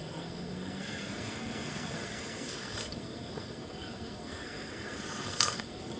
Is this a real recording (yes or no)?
no